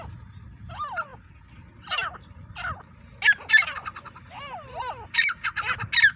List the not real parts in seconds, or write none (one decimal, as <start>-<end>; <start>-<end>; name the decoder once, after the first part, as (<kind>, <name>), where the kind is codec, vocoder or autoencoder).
none